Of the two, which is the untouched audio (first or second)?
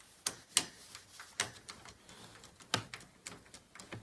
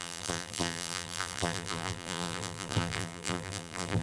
first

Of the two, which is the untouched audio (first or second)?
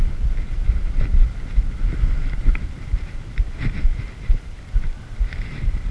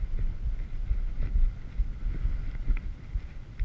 second